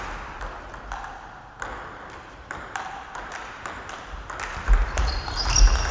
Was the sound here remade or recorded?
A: recorded